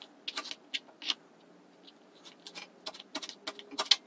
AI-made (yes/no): no